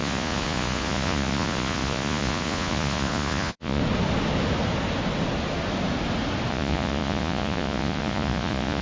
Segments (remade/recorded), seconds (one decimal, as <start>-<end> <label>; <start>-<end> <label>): 0.0-3.8 remade; 3.8-6.5 recorded; 6.5-8.8 remade